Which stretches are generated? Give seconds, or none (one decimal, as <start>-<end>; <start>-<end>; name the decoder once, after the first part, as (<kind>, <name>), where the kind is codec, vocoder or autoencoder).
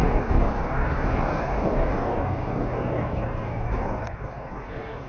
0.0-5.1 (codec, DAC)